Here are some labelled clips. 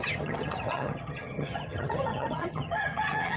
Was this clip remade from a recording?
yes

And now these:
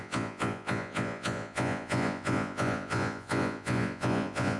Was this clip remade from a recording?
yes